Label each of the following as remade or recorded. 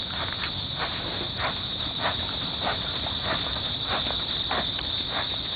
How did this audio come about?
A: recorded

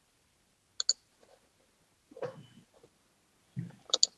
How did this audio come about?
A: recorded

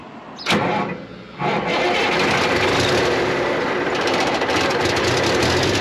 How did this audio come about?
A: recorded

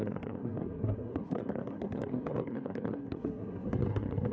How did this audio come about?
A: remade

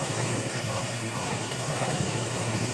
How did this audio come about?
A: remade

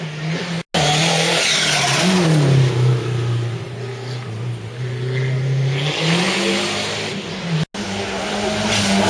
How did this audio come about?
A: recorded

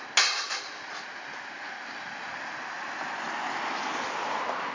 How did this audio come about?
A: recorded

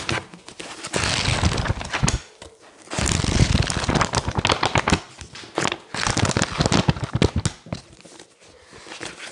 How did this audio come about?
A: recorded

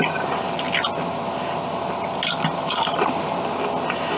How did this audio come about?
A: recorded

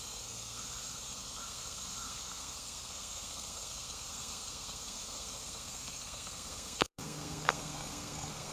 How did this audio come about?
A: remade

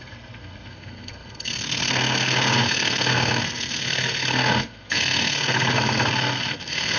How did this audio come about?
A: remade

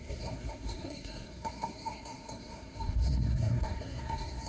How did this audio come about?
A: remade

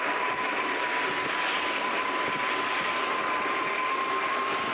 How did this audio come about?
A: recorded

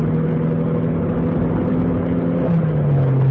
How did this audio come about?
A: recorded